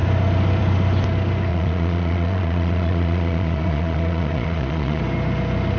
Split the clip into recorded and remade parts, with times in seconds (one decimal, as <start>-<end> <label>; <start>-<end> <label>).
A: 0.0-1.5 recorded; 1.5-5.0 remade; 5.0-5.8 recorded